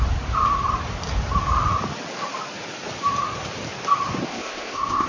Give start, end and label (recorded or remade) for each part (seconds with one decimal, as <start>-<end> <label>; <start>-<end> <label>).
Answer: 0.0-4.3 recorded; 4.3-5.1 remade